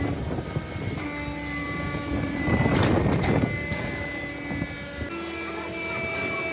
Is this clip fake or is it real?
real